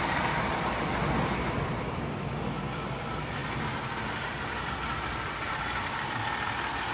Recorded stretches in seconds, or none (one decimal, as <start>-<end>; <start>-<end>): 0.0-6.9